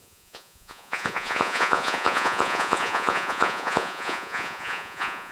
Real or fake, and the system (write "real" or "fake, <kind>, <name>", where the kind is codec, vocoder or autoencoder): fake, vocoder, Vocos